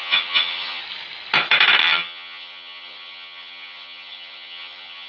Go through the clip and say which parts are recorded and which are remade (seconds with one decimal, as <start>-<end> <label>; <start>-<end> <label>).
0.0-0.8 remade; 0.8-1.8 recorded; 1.8-5.1 remade